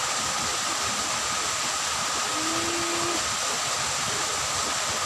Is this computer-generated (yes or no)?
no